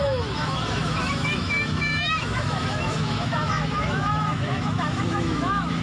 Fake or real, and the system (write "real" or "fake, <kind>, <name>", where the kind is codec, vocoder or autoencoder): fake, autoencoder, DAC-VAE